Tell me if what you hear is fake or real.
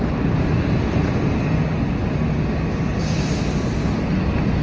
real